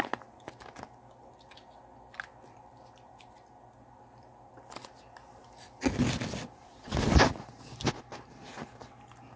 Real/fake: real